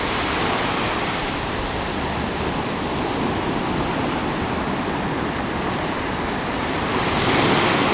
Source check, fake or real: real